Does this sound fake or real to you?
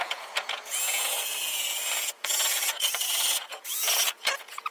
fake